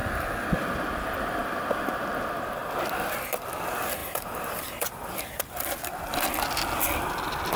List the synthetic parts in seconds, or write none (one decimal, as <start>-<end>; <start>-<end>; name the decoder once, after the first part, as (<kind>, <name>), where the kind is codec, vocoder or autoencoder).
4.0-5.4 (vocoder, BigVGAN v2)

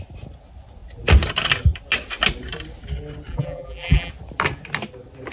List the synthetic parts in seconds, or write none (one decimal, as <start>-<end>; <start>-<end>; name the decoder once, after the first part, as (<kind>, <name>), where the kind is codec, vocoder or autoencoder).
3.3-4.1 (vocoder, BigVGAN v2)

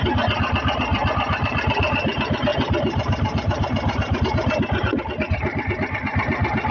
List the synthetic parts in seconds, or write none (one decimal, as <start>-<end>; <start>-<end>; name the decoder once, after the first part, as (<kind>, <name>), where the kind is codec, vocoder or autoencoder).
0.0-6.7 (vocoder, BigVGAN v2)

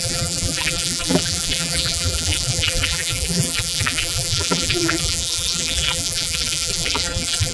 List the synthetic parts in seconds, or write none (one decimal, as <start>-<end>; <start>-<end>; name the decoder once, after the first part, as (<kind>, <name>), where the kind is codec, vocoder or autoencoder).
0.0-7.5 (vocoder, BigVGAN v2)

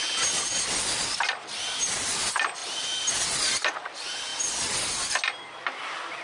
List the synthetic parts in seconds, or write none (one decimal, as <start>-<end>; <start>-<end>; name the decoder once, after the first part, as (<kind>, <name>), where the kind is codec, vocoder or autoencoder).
none

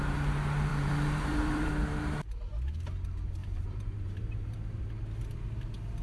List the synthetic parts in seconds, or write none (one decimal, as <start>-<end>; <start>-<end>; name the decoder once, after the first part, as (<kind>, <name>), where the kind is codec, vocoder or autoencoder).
0.7-1.7 (vocoder, BigVGAN v2); 3.4-4.9